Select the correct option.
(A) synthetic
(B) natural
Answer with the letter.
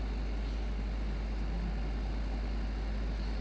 B